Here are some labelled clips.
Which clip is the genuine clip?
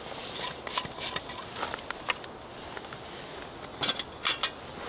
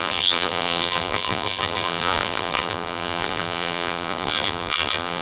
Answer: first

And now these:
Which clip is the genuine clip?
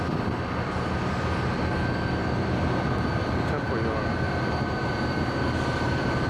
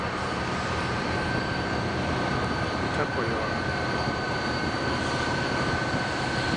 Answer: first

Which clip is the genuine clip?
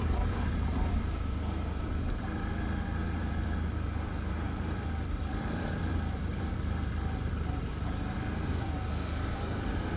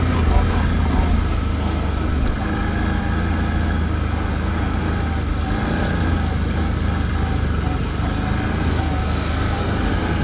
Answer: second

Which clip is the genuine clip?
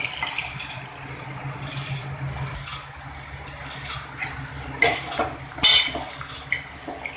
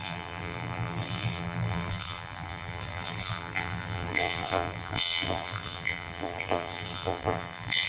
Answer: first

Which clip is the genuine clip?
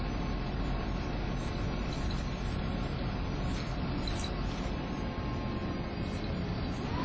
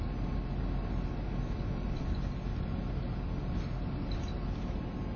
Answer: second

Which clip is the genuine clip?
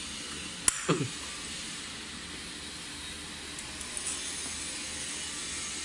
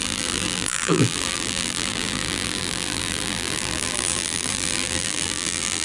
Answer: first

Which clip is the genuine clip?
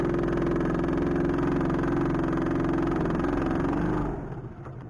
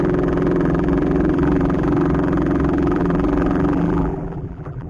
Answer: first